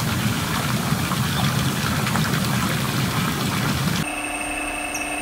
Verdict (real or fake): real